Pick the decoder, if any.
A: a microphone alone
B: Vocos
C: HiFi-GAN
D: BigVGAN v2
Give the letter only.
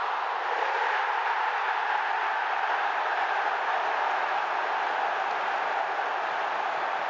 A